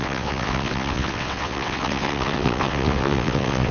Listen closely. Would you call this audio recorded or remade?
remade